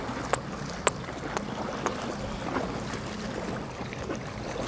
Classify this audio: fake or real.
real